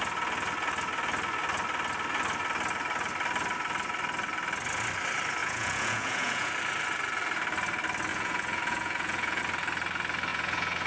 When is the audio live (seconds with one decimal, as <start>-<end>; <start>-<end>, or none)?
0.0-5.4; 6.5-8.1; 9.4-10.3